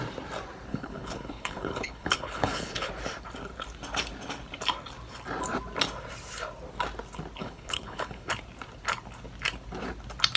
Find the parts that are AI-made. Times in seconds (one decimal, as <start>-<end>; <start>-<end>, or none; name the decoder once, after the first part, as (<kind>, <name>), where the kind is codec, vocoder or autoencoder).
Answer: 0.7-2.9 (codec, HILCodec); 7.4-8.3